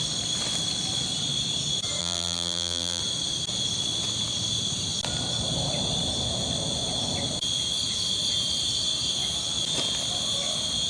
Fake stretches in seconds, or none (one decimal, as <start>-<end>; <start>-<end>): 2.0-3.0

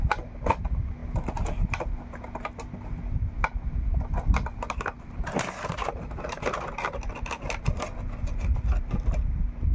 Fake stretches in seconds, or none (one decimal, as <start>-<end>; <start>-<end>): none

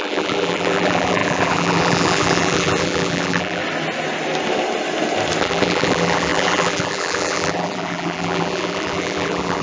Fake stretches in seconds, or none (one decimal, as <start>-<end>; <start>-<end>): 0.0-3.6; 5.4-9.6

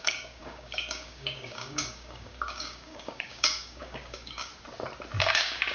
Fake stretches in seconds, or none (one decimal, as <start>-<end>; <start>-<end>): 0.0-4.5; 5.2-5.7

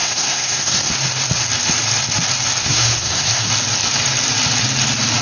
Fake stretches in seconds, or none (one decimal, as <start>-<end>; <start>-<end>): 0.0-0.9; 2.6-3.5